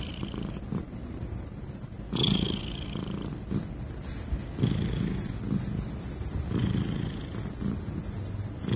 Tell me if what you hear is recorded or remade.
recorded